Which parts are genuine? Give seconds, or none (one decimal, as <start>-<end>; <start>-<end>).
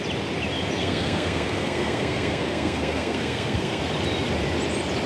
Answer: 0.0-0.8; 3.8-5.1